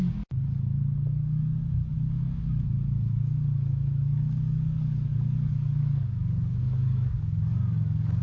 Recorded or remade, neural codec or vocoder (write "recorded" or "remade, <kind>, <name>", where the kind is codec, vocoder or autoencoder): remade, codec, DAC